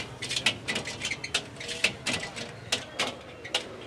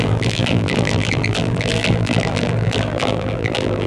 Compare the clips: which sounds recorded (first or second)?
first